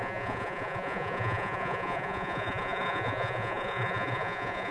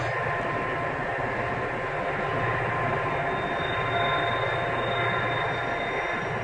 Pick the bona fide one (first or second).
second